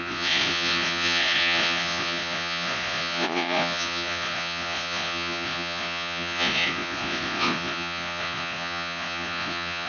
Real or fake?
fake